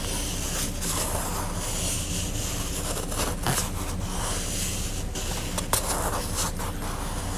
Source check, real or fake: real